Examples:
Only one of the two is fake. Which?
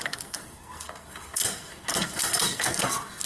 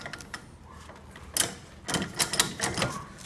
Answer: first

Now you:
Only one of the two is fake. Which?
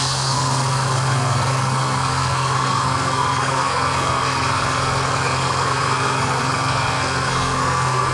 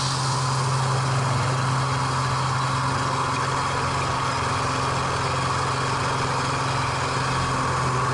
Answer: first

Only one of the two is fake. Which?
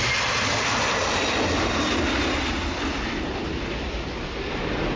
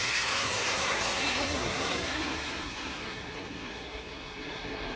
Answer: second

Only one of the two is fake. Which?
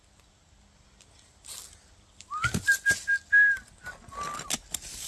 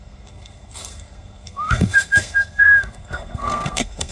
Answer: second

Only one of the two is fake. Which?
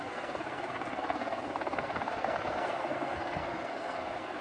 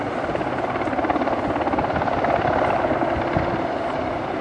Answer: first